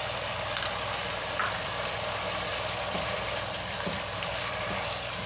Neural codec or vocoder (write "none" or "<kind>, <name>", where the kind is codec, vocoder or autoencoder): vocoder, BigVGAN v2